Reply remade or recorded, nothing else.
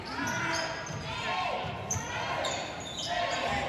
recorded